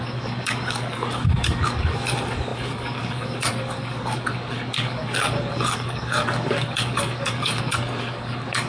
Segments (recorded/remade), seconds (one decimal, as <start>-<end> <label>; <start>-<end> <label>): 0.0-8.7 remade